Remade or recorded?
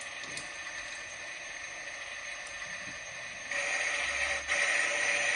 recorded